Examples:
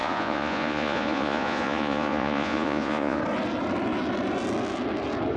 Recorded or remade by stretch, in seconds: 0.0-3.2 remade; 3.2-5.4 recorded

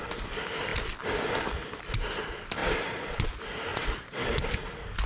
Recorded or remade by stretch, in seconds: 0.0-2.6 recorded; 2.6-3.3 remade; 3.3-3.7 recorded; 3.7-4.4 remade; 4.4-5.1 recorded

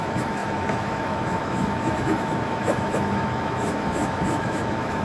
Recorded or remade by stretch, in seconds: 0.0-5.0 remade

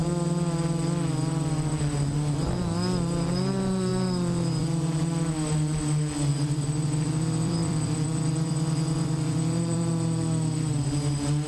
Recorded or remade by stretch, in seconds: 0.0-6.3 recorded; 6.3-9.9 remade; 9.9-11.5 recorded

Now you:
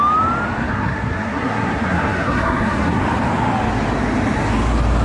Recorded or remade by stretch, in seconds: 0.0-0.7 recorded; 0.7-3.0 remade; 3.0-5.0 recorded

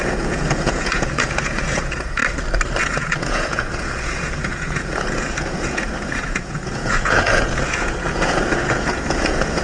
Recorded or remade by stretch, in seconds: 0.0-2.2 remade; 2.2-2.8 recorded; 2.8-9.6 remade

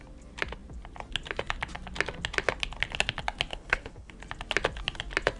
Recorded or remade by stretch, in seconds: 0.0-3.5 recorded; 3.5-4.1 remade; 4.1-5.4 recorded